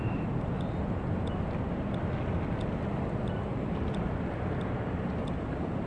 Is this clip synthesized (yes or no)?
no